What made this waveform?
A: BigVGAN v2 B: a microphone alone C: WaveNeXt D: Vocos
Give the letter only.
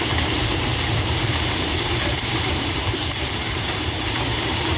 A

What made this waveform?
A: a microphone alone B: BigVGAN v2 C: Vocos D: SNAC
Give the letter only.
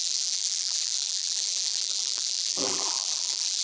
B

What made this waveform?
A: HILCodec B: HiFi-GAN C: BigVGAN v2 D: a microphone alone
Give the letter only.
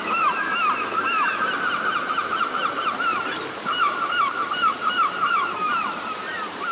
C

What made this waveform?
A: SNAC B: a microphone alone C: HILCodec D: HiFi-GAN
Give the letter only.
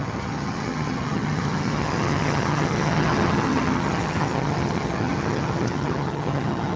D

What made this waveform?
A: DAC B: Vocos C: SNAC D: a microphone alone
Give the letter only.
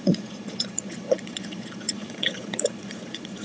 B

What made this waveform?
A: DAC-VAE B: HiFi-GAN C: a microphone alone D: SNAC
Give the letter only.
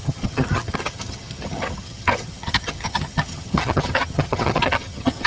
B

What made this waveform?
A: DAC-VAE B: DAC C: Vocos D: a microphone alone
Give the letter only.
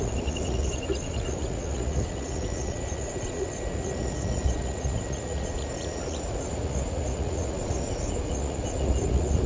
C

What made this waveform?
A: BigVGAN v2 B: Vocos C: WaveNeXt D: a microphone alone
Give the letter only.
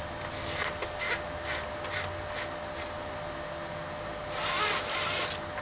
D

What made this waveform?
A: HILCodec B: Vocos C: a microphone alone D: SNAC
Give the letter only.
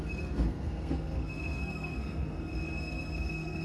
D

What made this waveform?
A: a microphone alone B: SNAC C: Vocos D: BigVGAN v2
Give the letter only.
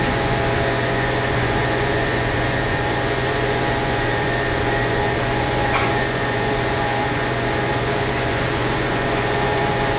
C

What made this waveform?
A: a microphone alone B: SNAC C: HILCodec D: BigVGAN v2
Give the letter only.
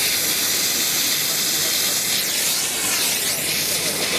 A